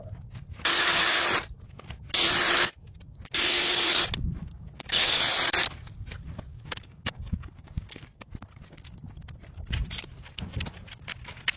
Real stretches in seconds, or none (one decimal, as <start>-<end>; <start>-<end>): 0.0-4.4; 5.2-6.5; 8.3-11.6